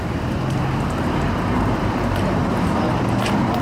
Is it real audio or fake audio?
fake